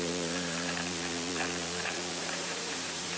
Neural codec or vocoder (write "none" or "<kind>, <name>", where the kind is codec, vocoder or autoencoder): vocoder, Vocos